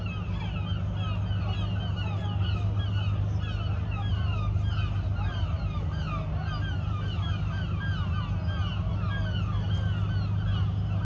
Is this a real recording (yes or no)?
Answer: yes